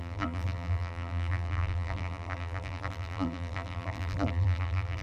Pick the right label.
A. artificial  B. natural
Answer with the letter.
A